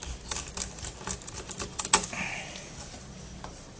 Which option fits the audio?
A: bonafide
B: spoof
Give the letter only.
A